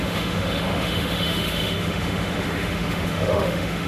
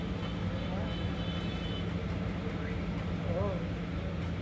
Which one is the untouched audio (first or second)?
second